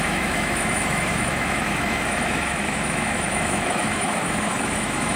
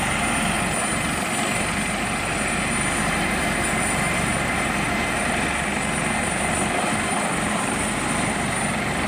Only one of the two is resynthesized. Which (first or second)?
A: first